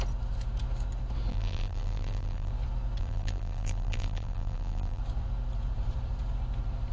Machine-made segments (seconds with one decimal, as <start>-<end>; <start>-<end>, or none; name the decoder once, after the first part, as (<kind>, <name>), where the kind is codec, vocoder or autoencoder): 1.3-2.5 (vocoder, BigVGAN v2); 3.0-5.0